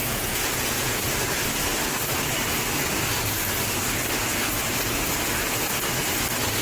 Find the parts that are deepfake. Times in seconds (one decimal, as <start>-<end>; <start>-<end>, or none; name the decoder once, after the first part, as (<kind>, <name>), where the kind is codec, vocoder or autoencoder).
0.0-1.0 (vocoder, Vocos)